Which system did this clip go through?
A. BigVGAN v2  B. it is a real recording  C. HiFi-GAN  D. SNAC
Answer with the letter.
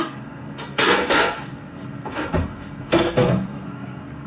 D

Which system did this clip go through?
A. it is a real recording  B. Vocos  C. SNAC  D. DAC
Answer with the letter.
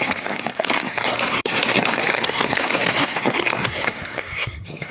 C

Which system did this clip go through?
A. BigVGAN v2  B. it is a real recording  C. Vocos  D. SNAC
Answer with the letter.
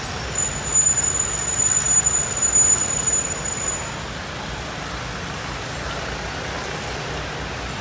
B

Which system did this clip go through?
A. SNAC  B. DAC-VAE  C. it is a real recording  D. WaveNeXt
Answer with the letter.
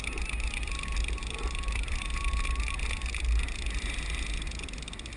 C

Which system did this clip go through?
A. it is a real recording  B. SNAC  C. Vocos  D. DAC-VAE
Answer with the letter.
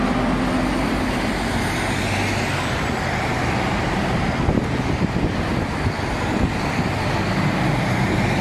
A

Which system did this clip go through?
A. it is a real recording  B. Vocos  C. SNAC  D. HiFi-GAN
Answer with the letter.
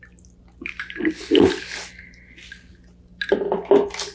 A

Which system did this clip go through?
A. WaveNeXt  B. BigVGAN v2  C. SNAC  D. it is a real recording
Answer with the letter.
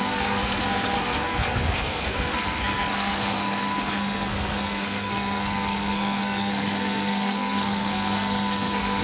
C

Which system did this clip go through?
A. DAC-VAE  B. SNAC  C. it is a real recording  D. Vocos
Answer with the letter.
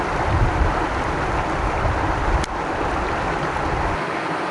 C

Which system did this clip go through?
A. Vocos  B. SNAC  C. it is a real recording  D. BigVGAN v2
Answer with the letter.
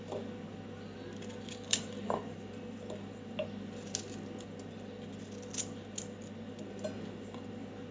C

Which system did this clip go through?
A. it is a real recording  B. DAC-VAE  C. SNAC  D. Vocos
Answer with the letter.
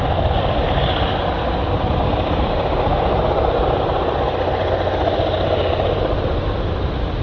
A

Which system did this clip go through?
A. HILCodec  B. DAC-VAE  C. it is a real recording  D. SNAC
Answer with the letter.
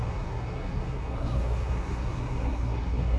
D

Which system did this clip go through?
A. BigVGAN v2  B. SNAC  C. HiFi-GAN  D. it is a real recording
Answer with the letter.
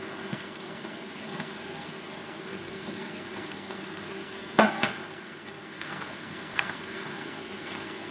B